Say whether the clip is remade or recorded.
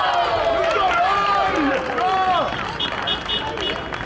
recorded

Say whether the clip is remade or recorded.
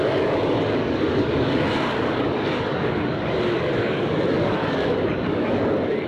remade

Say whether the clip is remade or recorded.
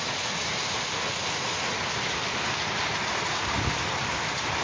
recorded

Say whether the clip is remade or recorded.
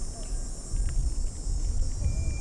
recorded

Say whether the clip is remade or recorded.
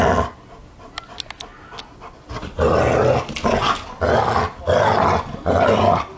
recorded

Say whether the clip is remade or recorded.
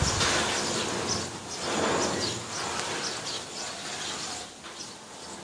recorded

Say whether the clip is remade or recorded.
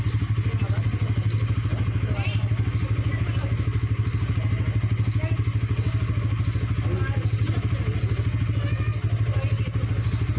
recorded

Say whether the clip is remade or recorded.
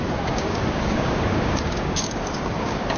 remade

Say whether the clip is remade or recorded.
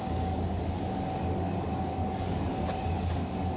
remade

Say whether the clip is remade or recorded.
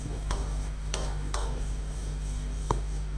remade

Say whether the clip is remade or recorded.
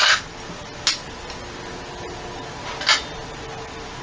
recorded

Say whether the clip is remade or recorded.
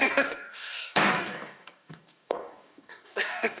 remade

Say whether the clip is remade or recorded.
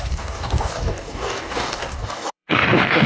remade